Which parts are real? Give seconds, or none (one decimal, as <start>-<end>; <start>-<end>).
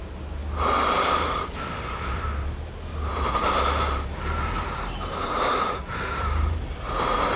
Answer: 0.4-0.9